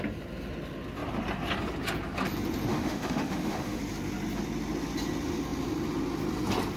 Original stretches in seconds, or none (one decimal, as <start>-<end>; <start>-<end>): 0.0-2.7; 3.8-6.8